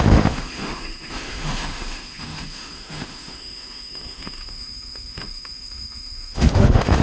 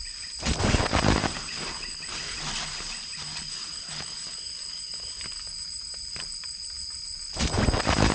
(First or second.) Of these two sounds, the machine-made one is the first